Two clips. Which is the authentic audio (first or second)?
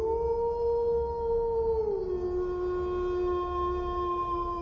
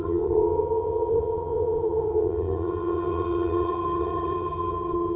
first